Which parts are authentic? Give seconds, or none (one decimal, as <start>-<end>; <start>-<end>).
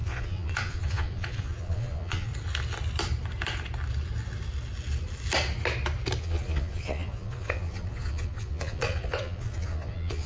2.3-6.2